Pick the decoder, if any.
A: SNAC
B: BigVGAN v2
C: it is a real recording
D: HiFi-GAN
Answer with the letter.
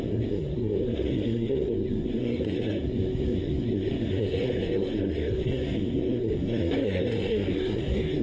A